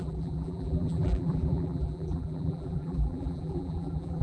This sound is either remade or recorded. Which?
remade